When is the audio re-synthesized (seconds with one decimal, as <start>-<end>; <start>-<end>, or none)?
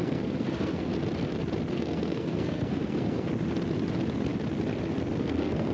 0.0-0.9; 1.7-3.3; 5.2-5.7